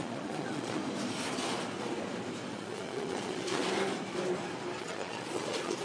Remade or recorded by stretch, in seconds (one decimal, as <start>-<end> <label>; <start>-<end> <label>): 0.0-0.8 remade; 0.8-2.5 recorded; 2.5-3.6 remade; 3.6-4.8 recorded; 4.8-5.8 remade